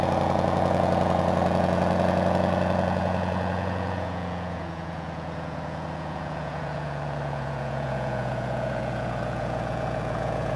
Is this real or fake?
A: fake